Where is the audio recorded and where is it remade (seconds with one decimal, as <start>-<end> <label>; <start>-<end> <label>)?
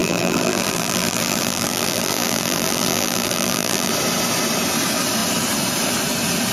0.0-3.9 remade; 3.9-6.5 recorded